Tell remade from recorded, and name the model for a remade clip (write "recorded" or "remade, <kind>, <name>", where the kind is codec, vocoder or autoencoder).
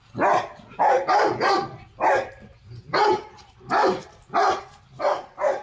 recorded